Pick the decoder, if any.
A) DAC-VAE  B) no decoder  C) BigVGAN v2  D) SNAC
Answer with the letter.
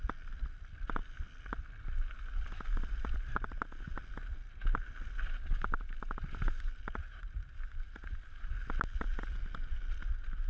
B